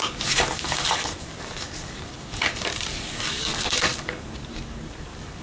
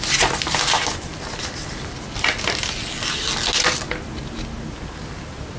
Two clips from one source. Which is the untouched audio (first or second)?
second